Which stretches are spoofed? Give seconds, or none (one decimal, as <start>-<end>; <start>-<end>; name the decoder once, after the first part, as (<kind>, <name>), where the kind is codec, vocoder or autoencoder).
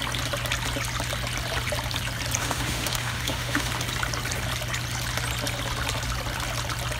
2.4-3.7 (autoencoder, DAC-VAE)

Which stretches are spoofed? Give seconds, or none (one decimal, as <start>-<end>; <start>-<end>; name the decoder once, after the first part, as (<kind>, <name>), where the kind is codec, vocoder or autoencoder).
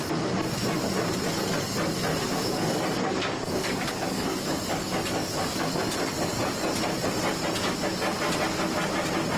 2.1-5.7 (codec, DAC)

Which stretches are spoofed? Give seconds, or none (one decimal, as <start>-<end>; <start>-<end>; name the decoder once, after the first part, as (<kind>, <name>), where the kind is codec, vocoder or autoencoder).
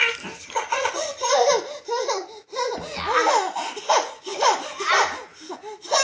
0.4-1.3 (vocoder, HiFi-GAN)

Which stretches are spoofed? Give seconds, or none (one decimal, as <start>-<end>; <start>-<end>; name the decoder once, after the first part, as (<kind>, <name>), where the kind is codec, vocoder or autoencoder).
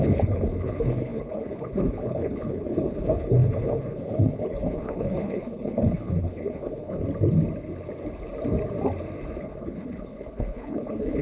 0.0-7.0 (codec, HILCodec); 9.4-11.2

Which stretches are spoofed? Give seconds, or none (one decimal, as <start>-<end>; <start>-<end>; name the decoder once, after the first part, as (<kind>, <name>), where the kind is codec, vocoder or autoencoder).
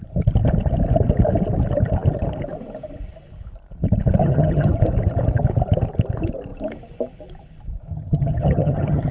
4.2-4.7 (vocoder, HiFi-GAN); 7.9-9.1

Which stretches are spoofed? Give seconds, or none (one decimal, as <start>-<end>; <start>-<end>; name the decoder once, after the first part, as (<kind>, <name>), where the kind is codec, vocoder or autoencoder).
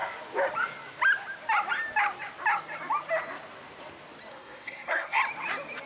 4.3-5.2 (codec, SNAC)